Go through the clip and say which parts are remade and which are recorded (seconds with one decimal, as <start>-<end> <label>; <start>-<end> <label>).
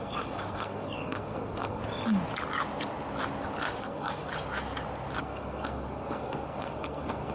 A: 0.0-1.8 remade; 1.8-3.8 recorded; 3.8-4.3 remade; 4.3-5.2 recorded; 5.2-7.3 remade